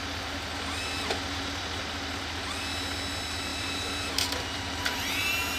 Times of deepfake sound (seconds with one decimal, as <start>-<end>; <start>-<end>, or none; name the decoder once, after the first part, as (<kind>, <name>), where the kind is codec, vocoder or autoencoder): 3.5-5.6 (vocoder, BigVGAN v2)